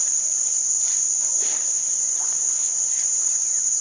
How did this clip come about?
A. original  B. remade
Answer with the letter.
A